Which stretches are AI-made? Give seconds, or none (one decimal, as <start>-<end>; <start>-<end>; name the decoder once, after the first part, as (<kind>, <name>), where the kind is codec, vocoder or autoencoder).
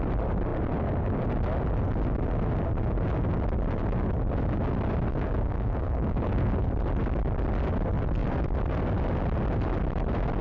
5.1-6.7 (codec, DAC)